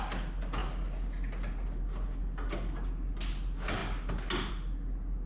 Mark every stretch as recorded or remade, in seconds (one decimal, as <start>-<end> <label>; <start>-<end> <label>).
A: 0.0-5.3 recorded